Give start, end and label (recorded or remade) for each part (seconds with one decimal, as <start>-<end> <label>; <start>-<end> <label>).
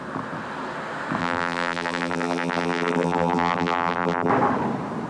0.0-1.2 recorded; 1.2-4.3 remade; 4.3-5.1 recorded